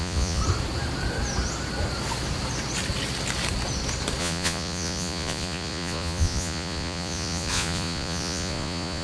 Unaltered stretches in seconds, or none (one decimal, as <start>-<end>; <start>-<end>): 0.4-4.2